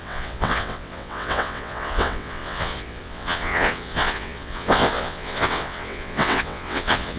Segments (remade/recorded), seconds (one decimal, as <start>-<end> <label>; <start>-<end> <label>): 0.0-7.2 remade